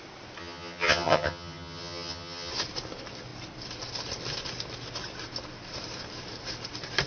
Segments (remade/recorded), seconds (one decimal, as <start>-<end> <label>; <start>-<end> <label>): 0.0-0.4 recorded; 0.4-2.5 remade; 2.5-7.1 recorded